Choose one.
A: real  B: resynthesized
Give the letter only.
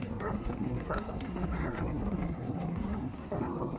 B